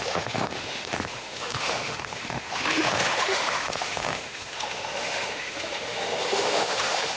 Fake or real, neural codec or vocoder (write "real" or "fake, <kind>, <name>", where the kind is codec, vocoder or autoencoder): fake, autoencoder, DAC-VAE